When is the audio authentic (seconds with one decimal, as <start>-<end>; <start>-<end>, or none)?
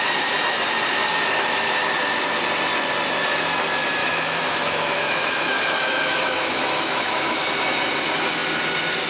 0.0-4.0; 7.4-9.1